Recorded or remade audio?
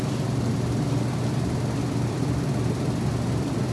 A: remade